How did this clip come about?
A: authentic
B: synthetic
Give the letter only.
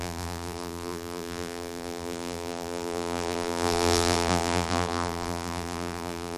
B